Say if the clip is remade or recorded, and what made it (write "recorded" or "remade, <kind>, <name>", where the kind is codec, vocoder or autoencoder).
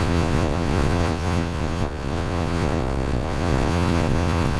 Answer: remade, vocoder, Vocos